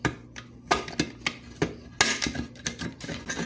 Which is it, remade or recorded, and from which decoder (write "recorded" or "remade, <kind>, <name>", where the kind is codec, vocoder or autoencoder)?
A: recorded